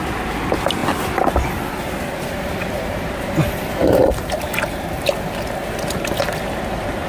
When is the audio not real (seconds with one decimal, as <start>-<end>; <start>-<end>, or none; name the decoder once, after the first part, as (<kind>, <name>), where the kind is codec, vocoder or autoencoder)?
none